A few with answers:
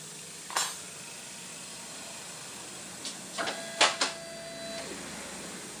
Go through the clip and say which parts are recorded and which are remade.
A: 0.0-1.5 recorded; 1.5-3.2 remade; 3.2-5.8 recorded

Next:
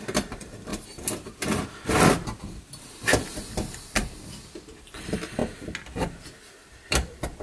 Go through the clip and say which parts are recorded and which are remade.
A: 0.0-0.7 remade; 0.7-2.8 recorded; 2.8-5.4 remade; 5.4-6.4 recorded; 6.4-7.4 remade